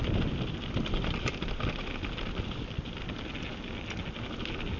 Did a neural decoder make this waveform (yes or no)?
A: no